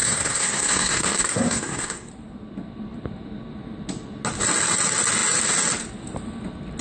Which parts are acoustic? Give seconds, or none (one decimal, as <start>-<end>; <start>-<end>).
2.1-6.8